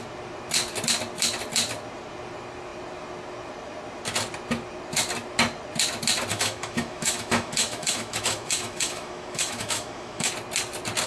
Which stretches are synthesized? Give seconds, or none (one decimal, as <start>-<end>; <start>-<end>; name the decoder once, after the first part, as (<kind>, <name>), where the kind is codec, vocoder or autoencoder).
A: 6.3-10.3 (autoencoder, DAC-VAE)